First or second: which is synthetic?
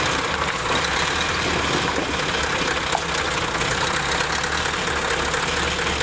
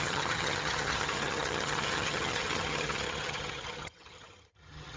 second